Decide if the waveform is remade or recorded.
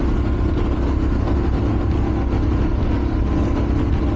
recorded